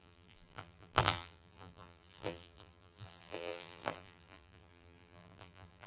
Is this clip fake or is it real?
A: fake